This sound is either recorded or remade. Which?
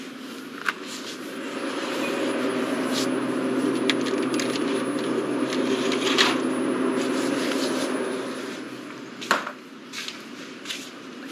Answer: recorded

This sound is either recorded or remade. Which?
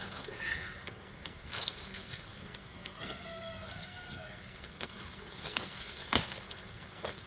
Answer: remade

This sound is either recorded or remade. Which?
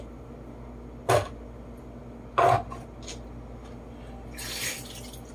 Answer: recorded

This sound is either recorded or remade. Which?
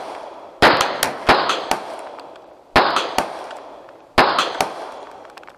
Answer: recorded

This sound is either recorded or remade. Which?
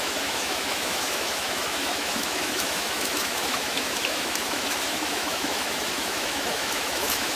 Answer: remade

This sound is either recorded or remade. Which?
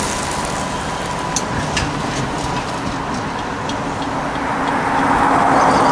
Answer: recorded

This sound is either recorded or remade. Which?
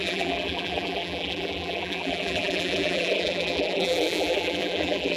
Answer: remade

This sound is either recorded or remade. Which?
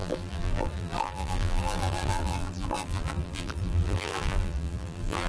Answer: remade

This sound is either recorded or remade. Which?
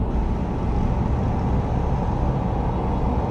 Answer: recorded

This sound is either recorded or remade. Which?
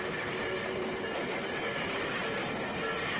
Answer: recorded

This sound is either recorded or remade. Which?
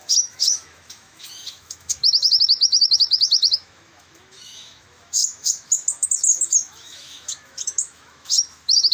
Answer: remade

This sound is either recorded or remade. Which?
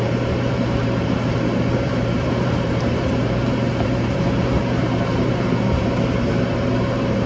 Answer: remade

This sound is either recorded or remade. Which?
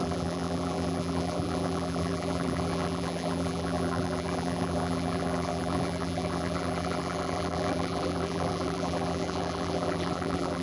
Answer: remade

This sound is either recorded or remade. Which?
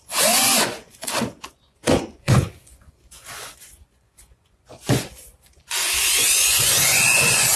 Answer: remade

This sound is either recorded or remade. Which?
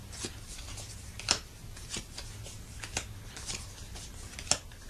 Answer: recorded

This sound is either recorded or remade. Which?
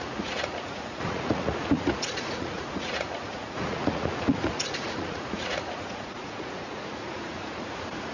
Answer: remade